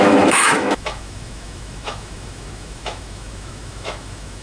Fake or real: fake